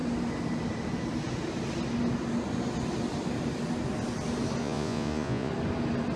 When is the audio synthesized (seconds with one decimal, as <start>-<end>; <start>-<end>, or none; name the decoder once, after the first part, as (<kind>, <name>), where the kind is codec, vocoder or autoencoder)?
4.6-5.5 (vocoder, Vocos)